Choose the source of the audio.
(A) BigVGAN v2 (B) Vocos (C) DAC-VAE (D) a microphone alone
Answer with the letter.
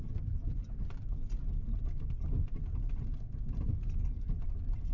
D